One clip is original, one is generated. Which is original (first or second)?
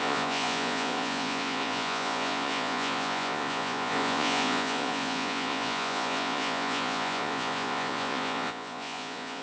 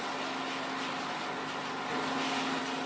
second